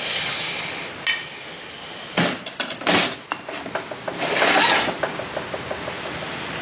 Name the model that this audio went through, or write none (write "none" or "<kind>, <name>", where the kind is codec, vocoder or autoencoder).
none